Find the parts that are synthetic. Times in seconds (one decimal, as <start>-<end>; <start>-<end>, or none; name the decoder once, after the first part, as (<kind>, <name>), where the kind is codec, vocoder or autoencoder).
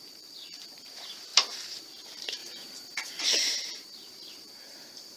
0.0-2.4 (vocoder, BigVGAN v2); 3.2-5.2